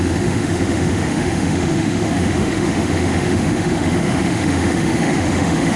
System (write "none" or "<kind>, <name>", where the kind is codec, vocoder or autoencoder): autoencoder, DAC-VAE